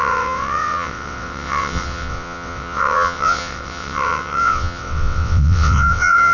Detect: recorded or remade remade